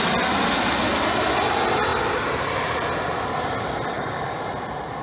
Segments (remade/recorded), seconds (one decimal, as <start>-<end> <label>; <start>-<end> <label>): 0.0-3.9 recorded; 3.9-4.4 remade; 4.4-5.0 recorded